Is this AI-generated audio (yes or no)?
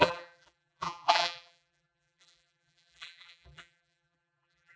yes